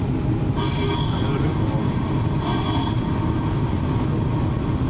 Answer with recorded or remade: recorded